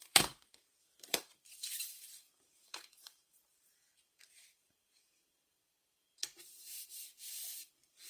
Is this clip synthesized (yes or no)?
yes